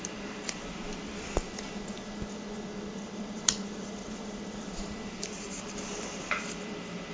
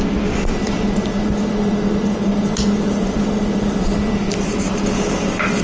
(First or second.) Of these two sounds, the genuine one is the second